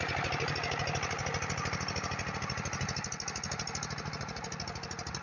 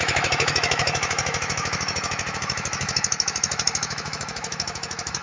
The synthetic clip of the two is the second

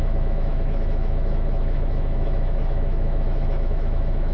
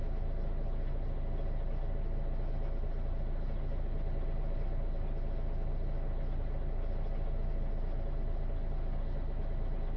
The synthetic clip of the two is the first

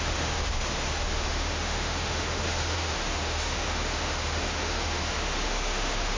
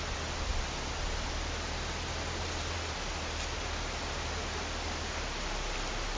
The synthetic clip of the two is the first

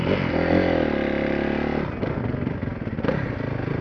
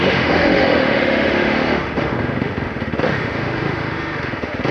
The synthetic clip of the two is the second